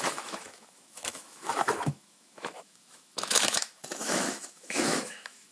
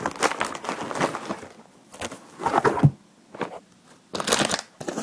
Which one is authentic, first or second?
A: second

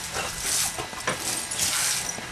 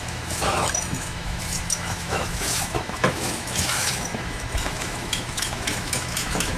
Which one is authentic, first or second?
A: first